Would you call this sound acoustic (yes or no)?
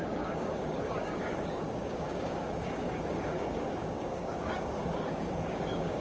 no